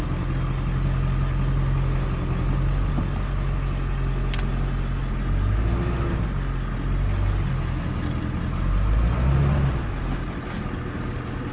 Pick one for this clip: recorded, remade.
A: recorded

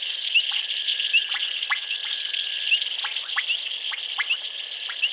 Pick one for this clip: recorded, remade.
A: recorded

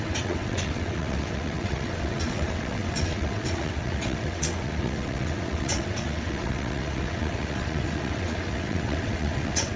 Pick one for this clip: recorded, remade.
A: remade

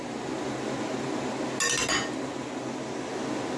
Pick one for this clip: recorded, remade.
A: recorded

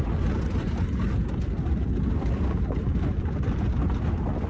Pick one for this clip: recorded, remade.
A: recorded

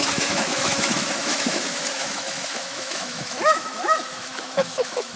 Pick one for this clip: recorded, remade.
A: remade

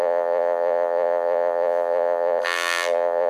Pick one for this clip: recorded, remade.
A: remade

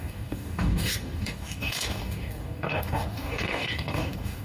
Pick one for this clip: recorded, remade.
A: remade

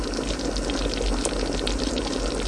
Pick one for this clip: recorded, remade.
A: recorded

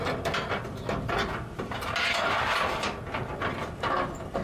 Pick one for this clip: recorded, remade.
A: recorded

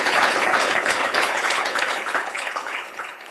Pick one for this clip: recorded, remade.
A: remade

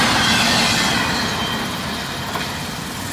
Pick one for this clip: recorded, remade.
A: recorded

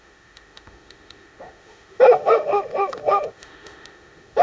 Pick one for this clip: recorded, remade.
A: remade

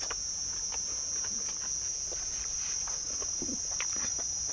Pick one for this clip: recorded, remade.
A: recorded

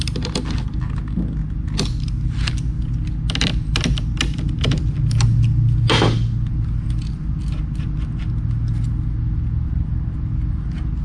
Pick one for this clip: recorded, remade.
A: recorded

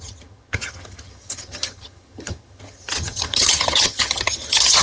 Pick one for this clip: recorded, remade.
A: remade